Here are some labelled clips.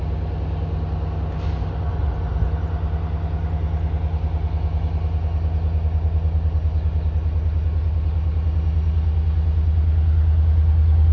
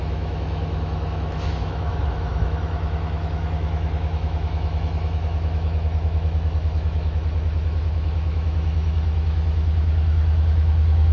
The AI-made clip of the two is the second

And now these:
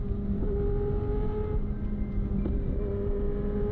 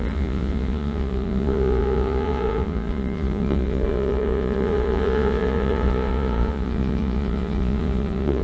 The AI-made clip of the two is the second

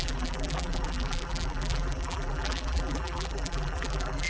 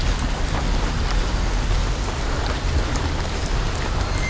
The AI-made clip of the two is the first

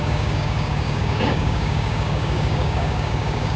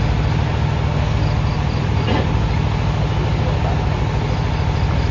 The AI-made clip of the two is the first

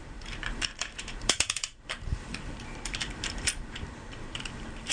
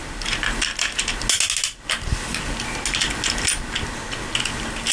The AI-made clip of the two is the first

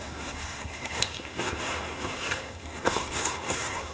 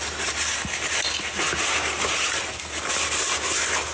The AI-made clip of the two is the first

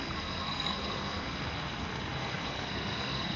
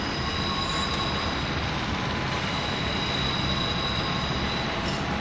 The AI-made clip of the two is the first